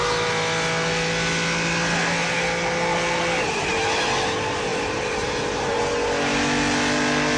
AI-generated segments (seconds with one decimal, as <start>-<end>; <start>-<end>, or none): 4.7-5.8